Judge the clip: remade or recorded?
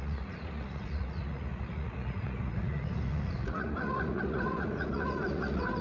remade